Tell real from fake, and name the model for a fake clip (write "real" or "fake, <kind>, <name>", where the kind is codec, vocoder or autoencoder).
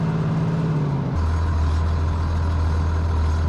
real